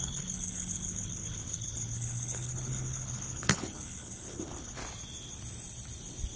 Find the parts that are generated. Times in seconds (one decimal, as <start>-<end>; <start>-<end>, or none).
0.0-4.8